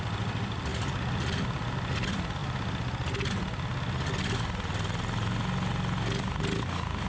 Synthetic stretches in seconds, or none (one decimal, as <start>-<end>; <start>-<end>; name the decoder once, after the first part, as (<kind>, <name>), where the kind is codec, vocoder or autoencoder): none